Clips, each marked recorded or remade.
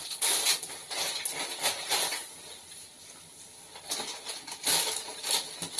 recorded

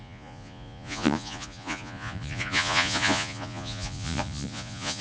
remade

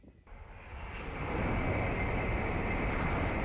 recorded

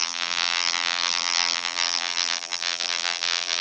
remade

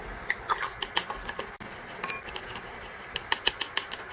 recorded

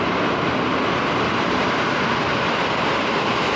recorded